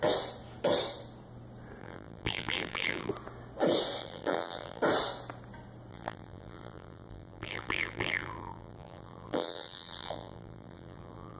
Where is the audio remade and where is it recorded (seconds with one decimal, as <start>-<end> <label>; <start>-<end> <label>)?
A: 0.0-1.8 recorded; 1.8-3.1 remade; 3.1-4.0 recorded; 4.0-4.8 remade; 4.8-5.9 recorded; 5.9-11.4 remade